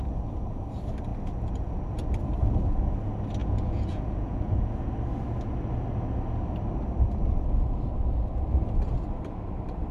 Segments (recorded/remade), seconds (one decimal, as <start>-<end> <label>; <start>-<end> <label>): 0.0-3.4 recorded; 3.4-4.9 remade; 4.9-9.9 recorded